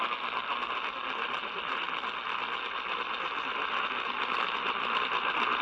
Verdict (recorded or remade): recorded